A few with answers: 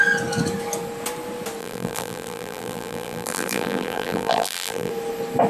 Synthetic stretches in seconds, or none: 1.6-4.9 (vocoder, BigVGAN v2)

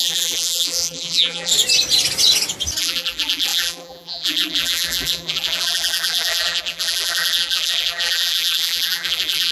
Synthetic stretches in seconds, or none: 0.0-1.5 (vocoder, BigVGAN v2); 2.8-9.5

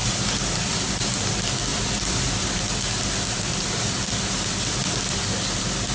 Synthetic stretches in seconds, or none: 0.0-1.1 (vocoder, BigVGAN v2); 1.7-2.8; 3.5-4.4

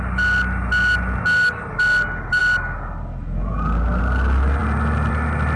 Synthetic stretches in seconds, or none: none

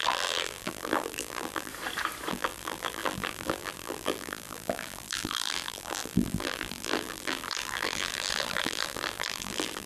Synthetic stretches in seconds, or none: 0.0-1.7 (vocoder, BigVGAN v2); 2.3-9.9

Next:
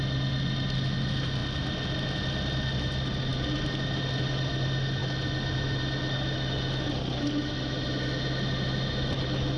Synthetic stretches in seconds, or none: none

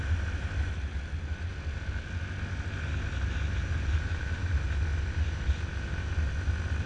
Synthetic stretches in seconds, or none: 3.6-4.5 (vocoder, BigVGAN v2)